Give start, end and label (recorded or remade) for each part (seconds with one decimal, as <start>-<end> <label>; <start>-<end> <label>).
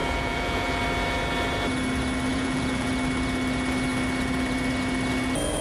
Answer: 0.0-0.8 remade; 0.8-2.3 recorded; 2.3-2.9 remade; 2.9-5.6 recorded